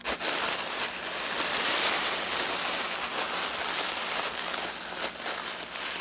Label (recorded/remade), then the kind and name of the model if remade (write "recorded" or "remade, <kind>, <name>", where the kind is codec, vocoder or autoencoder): recorded